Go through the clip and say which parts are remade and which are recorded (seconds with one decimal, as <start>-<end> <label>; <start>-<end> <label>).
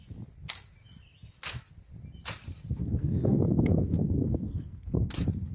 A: 0.0-2.8 recorded; 2.8-5.1 remade; 5.1-5.5 recorded